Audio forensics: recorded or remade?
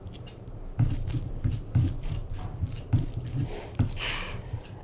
remade